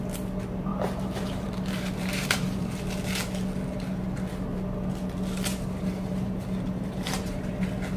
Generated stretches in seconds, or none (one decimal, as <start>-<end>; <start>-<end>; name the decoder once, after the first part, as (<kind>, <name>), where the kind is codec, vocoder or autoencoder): 0.7-2.7 (vocoder, BigVGAN v2); 5.5-7.5